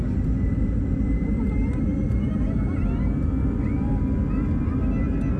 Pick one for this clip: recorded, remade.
recorded